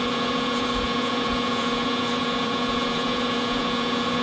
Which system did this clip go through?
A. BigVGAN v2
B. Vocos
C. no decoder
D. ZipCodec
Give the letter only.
B